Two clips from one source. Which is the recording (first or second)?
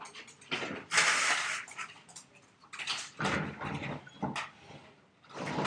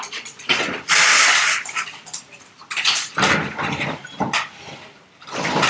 first